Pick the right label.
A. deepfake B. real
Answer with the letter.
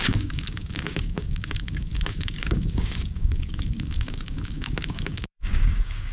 A